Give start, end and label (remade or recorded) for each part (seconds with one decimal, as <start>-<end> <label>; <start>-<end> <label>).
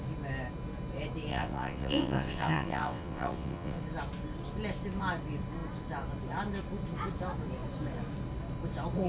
0.0-1.3 recorded; 1.3-3.8 remade; 3.8-9.1 recorded